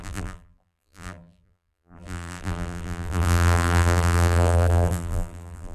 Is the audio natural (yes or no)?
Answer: no